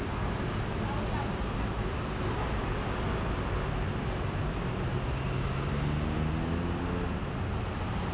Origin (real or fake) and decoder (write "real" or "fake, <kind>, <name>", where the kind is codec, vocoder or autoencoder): real